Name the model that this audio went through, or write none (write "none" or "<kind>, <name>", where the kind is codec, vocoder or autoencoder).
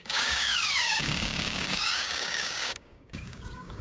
codec, DAC